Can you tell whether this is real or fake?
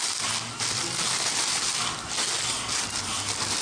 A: real